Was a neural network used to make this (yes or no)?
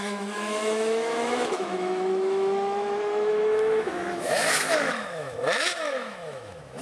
yes